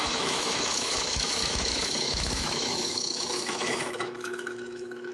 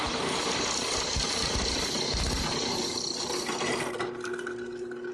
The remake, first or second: first